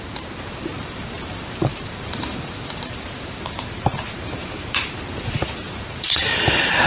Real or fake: fake